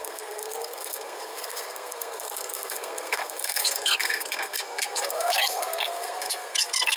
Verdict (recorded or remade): remade